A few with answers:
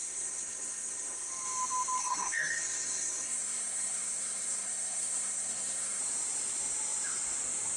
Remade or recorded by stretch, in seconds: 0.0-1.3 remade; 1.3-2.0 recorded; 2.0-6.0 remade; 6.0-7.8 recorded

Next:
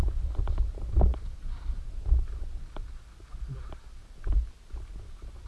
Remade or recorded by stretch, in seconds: 0.0-5.5 recorded

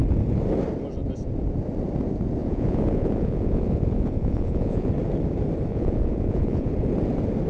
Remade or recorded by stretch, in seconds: 0.0-2.4 recorded; 2.4-4.9 remade; 4.9-5.7 recorded; 5.7-6.7 remade; 6.7-7.5 recorded

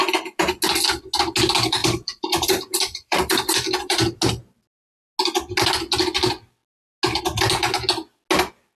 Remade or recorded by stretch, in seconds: 0.0-1.8 recorded; 1.8-4.2 remade; 4.2-8.8 recorded

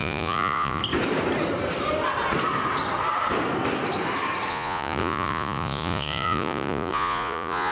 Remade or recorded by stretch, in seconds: 0.0-0.8 remade; 0.8-4.5 recorded; 4.5-7.7 remade

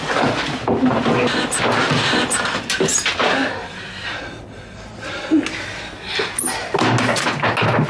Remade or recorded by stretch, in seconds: 0.0-7.9 recorded

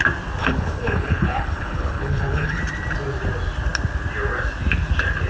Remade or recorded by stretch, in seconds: 0.0-0.4 recorded; 0.4-2.6 remade; 2.6-5.3 recorded

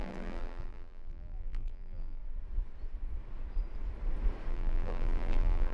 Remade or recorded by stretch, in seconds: 0.0-2.2 remade; 2.2-4.5 recorded; 4.5-5.7 remade